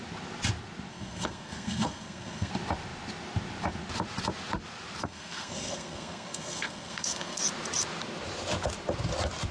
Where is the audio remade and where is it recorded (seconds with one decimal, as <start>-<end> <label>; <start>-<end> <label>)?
0.0-0.9 recorded; 0.9-2.5 remade; 2.5-5.0 recorded; 5.0-7.4 remade; 7.4-9.5 recorded